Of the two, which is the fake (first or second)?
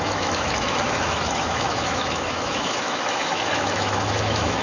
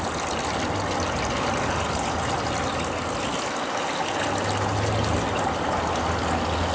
first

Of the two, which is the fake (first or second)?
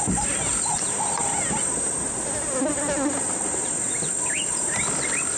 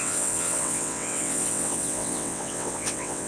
second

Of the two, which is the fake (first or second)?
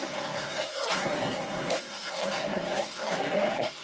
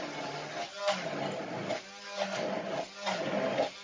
first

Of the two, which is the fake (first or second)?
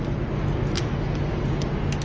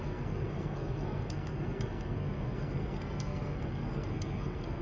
second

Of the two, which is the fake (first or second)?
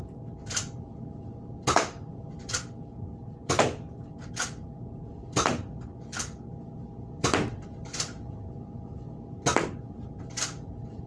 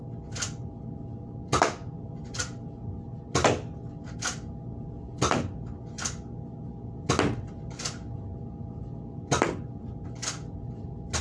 first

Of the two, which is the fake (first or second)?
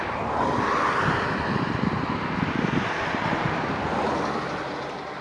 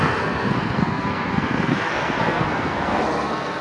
second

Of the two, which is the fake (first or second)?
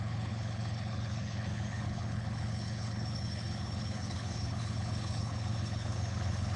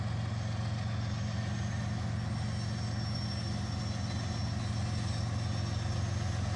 first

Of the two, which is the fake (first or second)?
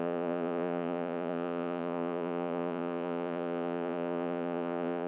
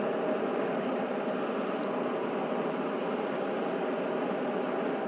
first